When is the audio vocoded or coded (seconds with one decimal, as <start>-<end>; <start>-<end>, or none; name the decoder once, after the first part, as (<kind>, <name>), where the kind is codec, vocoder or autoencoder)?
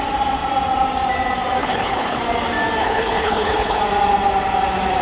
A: 1.6-2.2 (codec, HILCodec); 2.8-3.8